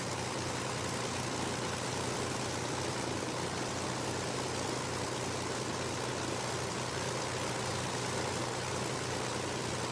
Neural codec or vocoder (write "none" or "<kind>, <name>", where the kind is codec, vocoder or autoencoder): none